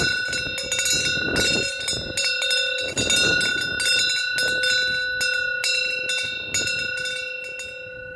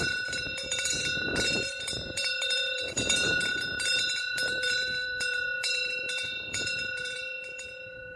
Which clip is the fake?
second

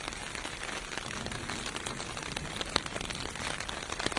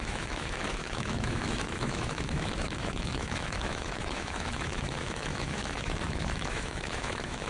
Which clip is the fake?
second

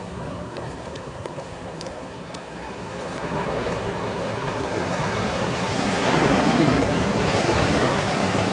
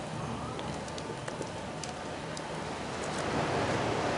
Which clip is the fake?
first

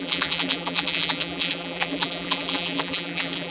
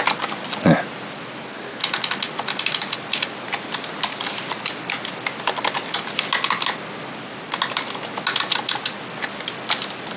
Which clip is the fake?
first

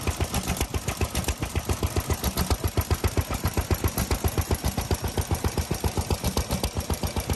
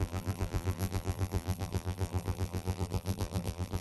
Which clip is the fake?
second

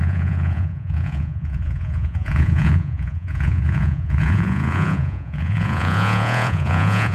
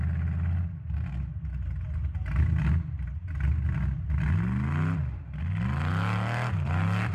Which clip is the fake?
first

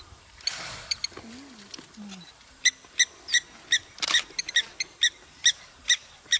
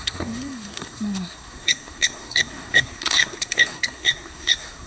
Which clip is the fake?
second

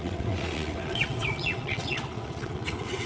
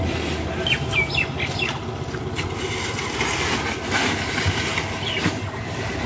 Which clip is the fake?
first